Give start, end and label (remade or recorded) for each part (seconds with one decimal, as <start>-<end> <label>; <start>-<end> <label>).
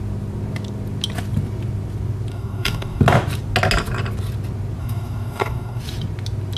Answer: 0.0-2.3 recorded; 2.3-3.0 remade; 3.0-4.8 recorded; 4.8-5.8 remade; 5.8-6.6 recorded